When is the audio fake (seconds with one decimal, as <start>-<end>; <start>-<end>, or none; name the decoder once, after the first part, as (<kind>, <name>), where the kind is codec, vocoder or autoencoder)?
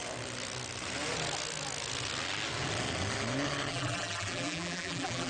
3.7-5.3 (vocoder, BigVGAN v2)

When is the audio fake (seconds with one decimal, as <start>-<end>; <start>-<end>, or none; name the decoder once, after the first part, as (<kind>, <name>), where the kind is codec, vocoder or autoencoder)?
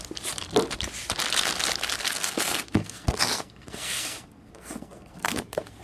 2.0-5.8 (codec, SNAC)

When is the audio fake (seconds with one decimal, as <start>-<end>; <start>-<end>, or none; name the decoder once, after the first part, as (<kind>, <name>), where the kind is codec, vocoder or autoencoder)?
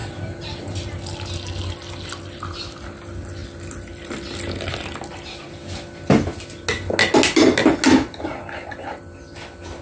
none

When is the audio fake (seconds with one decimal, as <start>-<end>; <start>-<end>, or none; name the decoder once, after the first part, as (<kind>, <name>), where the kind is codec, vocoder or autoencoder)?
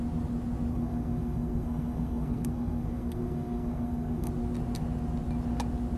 0.7-4.3 (codec, SNAC)